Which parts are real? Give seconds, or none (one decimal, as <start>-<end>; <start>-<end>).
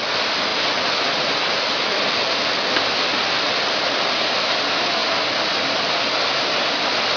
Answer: 0.0-7.2